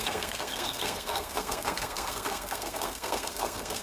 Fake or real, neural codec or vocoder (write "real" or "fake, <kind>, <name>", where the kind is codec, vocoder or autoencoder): fake, codec, SNAC